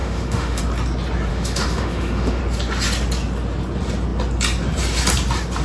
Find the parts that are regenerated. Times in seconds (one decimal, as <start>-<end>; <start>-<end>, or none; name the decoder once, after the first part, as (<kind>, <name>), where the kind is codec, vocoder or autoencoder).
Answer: 0.0-0.6 (autoencoder, DAC-VAE); 1.3-2.4